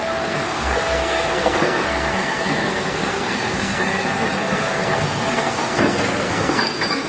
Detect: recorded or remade remade